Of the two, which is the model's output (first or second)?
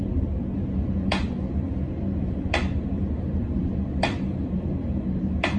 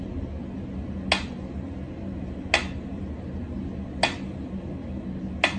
first